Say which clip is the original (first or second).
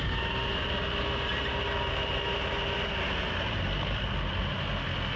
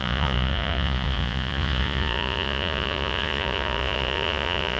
first